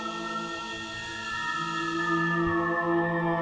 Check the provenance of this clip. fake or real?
real